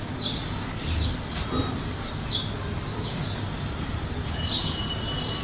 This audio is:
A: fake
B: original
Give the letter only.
A